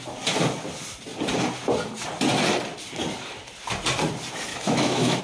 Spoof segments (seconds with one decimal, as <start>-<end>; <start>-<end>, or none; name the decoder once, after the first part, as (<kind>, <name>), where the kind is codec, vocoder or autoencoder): 4.5-5.2 (autoencoder, DAC-VAE)

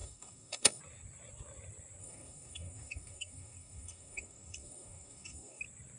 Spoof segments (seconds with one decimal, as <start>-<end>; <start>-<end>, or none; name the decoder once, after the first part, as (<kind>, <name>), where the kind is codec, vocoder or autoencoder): 0.0-0.8 (codec, DAC); 2.0-5.6

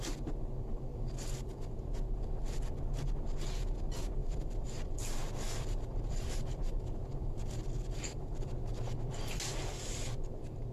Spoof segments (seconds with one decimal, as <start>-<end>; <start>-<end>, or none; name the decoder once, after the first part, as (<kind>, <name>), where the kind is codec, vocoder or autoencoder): 0.9-1.7 (vocoder, BigVGAN v2); 4.2-9.4

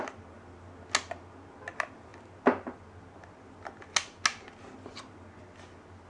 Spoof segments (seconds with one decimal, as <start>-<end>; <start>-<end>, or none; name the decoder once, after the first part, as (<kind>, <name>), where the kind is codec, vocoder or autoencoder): none

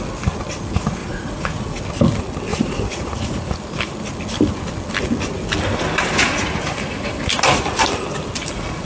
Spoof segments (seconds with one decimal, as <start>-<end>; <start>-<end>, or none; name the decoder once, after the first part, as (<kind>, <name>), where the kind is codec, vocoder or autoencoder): 1.0-1.8 (vocoder, Vocos); 2.5-3.5